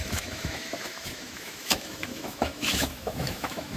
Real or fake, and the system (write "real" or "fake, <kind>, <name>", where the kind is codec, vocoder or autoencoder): fake, autoencoder, DAC-VAE